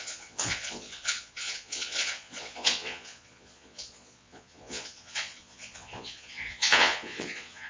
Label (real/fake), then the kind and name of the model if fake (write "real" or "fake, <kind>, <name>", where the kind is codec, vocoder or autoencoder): fake, vocoder, Vocos